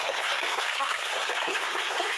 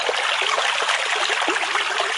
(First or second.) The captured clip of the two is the second